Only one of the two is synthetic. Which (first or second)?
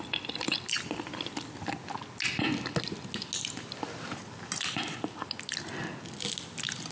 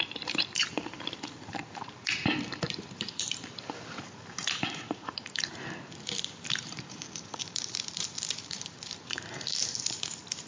second